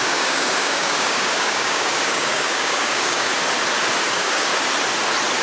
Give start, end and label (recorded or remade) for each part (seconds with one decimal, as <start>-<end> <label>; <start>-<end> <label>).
0.0-3.3 remade; 3.3-4.1 recorded; 4.1-4.5 remade; 4.5-5.4 recorded